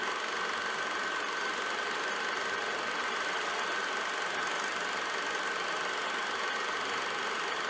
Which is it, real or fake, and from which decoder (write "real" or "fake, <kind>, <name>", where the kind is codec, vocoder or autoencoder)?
real